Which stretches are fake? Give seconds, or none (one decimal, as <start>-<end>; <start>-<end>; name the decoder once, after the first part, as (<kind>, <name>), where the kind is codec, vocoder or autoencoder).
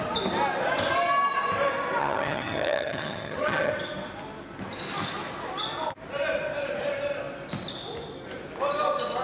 2.0-3.7 (vocoder, HiFi-GAN)